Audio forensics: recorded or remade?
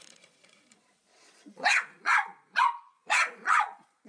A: remade